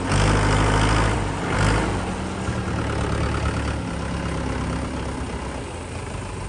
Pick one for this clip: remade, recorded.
recorded